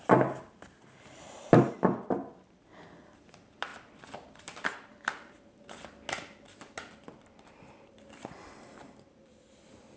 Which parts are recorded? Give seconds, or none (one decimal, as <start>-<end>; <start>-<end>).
0.0-10.0